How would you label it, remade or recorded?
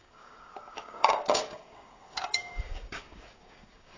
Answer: remade